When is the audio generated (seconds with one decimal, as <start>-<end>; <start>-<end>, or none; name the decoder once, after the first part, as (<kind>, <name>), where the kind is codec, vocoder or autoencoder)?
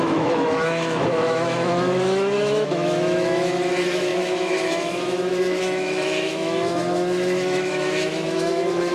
0.0-8.9 (autoencoder, DAC-VAE)